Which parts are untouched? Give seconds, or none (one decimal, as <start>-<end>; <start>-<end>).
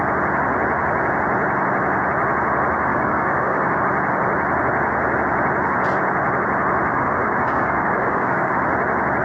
0.0-2.9; 3.8-6.9; 8.5-9.2